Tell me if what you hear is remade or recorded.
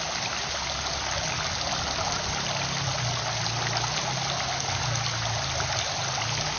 recorded